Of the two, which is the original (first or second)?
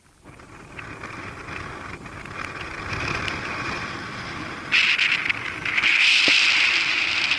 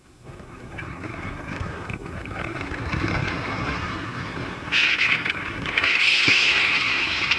first